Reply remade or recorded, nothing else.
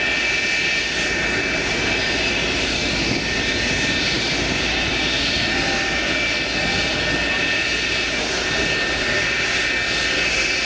recorded